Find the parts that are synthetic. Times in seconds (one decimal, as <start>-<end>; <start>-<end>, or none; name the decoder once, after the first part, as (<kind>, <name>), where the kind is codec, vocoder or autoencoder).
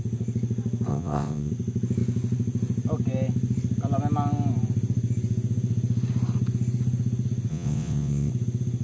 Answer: 0.9-1.5 (vocoder, WaveNeXt); 7.5-8.3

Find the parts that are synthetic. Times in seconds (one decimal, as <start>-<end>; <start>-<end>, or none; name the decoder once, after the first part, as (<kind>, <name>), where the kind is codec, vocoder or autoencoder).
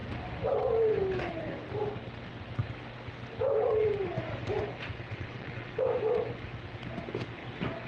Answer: 5.1-5.8 (vocoder, WaveNeXt)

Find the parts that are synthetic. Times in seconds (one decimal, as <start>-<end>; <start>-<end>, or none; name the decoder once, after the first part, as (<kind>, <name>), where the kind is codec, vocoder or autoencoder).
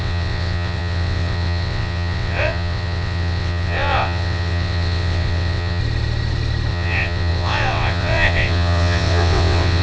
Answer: 0.0-5.8 (vocoder, WaveNeXt); 6.7-9.8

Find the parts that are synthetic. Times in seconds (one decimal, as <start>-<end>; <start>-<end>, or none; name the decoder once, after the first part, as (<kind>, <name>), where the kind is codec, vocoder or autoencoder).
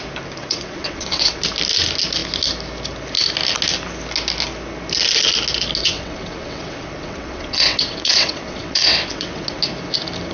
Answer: 0.4-1.4 (vocoder, WaveNeXt); 5.8-9.6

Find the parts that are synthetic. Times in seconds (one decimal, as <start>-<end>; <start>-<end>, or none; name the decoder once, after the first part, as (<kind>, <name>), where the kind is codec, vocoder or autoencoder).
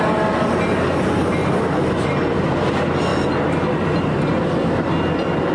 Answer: none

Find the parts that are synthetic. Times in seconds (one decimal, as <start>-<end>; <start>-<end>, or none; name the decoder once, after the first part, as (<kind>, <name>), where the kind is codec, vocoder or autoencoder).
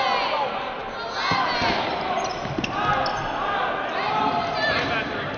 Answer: none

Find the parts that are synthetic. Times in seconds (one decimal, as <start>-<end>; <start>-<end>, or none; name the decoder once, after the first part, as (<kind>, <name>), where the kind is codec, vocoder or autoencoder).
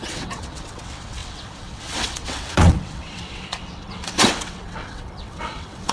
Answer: 0.0-5.9 (vocoder, WaveNeXt)